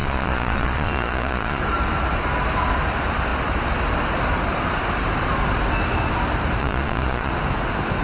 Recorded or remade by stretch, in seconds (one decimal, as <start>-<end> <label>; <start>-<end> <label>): 0.0-1.6 remade; 1.6-6.6 recorded; 6.6-7.3 remade; 7.3-8.0 recorded